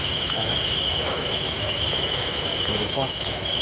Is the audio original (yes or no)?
no